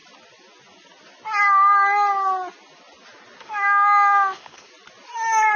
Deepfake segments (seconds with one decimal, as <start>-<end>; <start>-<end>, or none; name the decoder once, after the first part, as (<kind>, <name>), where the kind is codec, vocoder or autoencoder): 3.4-4.7 (autoencoder, DAC-VAE)